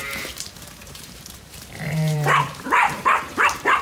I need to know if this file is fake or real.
fake